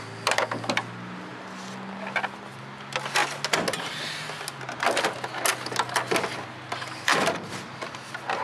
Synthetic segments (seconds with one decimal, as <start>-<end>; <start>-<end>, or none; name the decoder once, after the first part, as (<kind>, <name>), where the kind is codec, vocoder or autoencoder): none